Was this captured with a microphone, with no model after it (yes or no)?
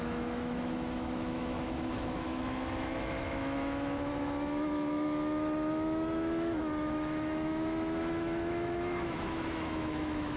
no